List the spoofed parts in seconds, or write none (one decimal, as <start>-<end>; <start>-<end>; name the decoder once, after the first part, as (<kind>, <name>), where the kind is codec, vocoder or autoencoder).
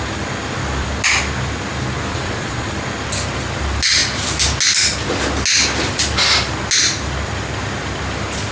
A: 2.1-2.7 (vocoder, Vocos)